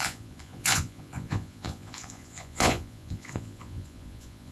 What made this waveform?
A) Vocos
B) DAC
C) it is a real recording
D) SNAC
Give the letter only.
A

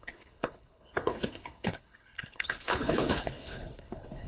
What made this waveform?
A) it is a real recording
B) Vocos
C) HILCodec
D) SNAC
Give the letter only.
C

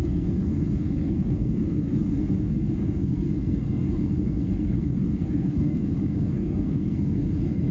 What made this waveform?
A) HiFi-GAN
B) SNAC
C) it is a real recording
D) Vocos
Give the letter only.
B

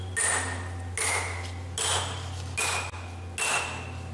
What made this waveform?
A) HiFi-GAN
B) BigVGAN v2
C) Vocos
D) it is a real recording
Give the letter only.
D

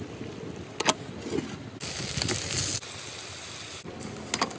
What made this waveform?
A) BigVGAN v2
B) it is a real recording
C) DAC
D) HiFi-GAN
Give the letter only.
B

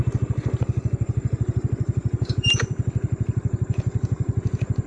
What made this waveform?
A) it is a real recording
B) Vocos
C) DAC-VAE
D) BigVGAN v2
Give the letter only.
D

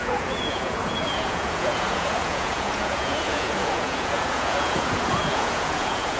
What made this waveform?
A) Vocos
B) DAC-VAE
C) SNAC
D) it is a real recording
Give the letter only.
A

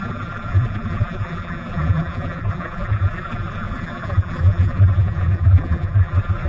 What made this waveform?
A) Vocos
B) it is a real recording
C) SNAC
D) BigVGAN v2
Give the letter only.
D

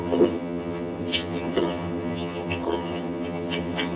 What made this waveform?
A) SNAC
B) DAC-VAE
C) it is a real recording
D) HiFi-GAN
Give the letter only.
D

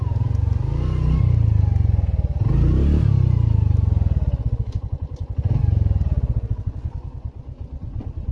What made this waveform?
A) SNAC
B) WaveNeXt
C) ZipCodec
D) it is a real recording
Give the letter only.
D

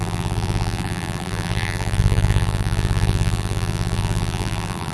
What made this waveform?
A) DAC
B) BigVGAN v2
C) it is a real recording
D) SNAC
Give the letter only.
B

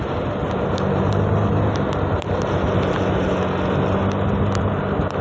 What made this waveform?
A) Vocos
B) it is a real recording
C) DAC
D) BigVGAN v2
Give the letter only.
B